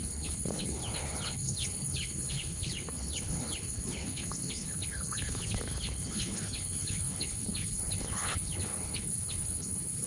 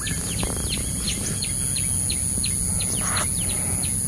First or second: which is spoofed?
first